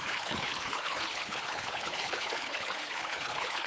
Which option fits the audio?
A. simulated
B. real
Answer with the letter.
A